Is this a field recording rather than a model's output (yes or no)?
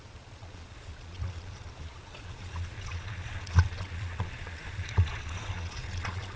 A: no